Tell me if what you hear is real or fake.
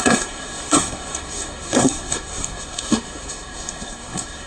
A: fake